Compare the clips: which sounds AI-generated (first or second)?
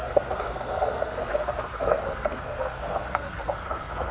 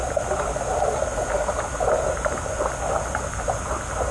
first